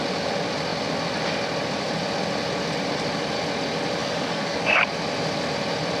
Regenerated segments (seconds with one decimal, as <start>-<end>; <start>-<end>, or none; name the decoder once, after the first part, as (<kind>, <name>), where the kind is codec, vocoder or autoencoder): 4.0-4.8 (codec, DAC)